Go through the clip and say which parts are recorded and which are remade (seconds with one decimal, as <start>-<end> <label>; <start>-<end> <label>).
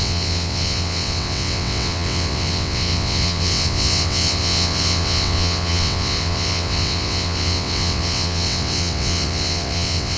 0.0-10.2 remade